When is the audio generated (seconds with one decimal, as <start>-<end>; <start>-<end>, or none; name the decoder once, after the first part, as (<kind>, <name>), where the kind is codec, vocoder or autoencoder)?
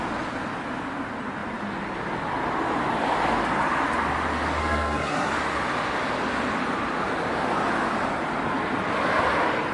4.6-5.3 (codec, SNAC)